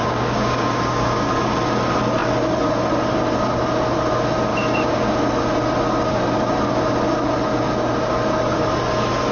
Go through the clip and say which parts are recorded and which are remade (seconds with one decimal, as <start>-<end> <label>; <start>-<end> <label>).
0.0-1.3 remade; 1.3-4.5 recorded; 4.5-5.1 remade; 5.1-9.3 recorded